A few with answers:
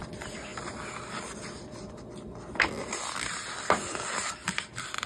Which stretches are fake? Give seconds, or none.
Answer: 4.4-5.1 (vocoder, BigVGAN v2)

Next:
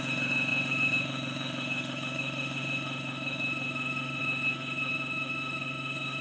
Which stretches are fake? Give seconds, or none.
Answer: 0.0-6.2 (autoencoder, DAC-VAE)

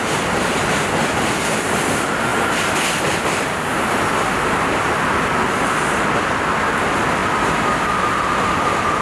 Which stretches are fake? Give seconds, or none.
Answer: none

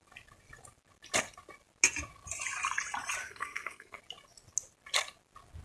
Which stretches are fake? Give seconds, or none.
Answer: 3.2-4.0 (codec, SNAC)

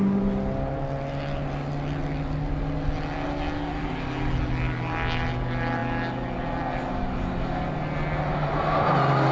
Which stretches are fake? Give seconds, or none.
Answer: none

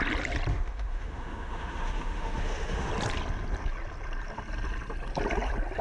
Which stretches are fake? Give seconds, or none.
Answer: 0.5-2.9 (autoencoder, DAC-VAE)